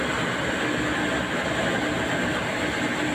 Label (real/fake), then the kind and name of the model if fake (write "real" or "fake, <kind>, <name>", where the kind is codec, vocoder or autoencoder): real